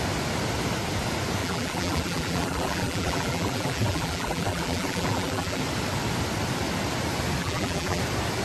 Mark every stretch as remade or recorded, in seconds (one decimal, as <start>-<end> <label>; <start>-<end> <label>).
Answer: 0.0-1.4 recorded; 1.4-5.6 remade; 5.6-7.4 recorded; 7.4-8.0 remade; 8.0-8.4 recorded